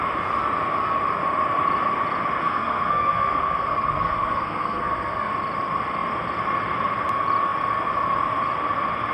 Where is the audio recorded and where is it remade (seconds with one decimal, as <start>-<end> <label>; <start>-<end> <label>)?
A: 0.0-2.4 recorded; 2.4-5.3 remade; 5.3-9.1 recorded